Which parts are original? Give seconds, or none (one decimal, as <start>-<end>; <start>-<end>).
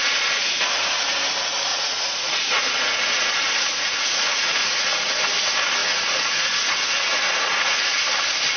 0.6-1.7; 5.2-5.8; 8.0-8.6